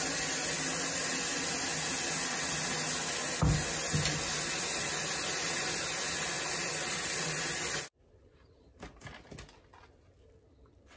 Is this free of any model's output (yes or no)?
yes